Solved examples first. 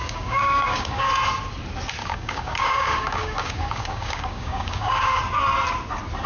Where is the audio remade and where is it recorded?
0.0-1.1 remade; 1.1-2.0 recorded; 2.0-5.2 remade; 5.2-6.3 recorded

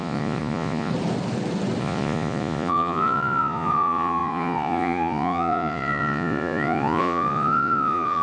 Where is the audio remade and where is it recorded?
0.0-0.9 remade; 0.9-1.8 recorded; 1.8-8.2 remade

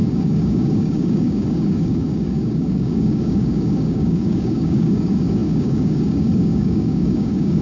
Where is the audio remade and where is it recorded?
0.0-7.6 remade

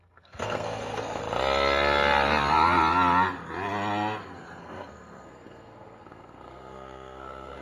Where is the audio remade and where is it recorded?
0.0-1.2 remade; 1.2-4.6 recorded; 4.6-7.6 remade

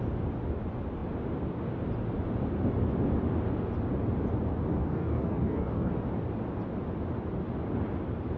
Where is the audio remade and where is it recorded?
0.0-4.8 recorded; 4.8-5.9 remade; 5.9-8.4 recorded

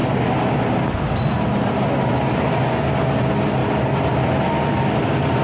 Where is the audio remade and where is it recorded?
0.0-5.4 recorded

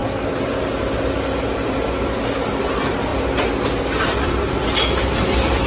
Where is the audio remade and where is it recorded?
0.0-2.6 recorded; 2.6-3.1 remade; 3.1-4.0 recorded; 4.0-5.7 remade